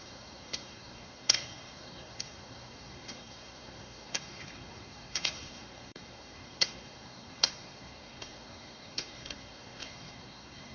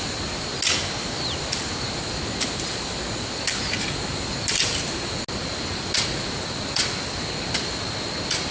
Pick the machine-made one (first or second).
first